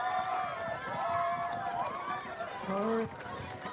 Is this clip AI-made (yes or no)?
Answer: no